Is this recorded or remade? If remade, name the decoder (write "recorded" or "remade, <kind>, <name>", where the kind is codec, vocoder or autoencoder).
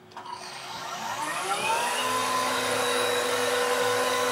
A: remade, codec, DAC